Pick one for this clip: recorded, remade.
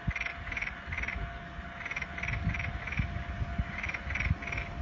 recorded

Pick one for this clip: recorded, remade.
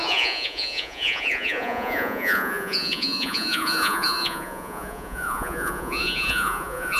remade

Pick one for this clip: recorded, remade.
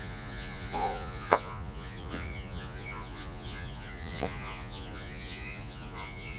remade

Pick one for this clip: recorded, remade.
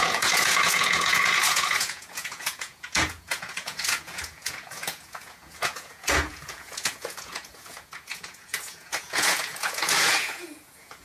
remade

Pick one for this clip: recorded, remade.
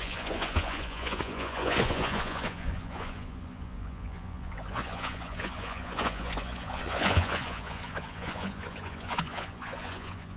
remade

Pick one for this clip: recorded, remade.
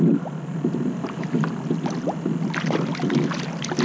recorded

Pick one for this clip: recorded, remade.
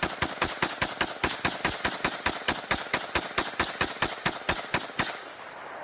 recorded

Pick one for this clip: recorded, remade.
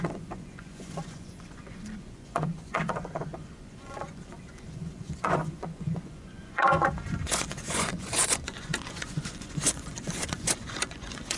remade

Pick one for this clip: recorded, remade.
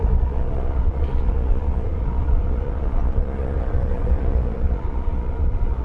remade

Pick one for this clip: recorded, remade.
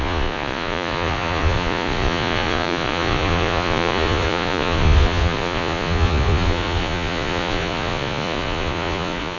remade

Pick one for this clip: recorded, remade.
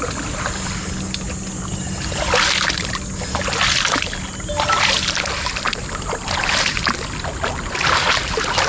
recorded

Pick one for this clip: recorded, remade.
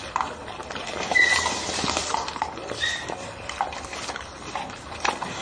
recorded